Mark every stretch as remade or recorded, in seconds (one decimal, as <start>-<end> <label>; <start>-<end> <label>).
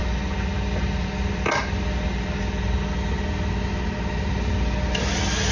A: 0.0-5.5 recorded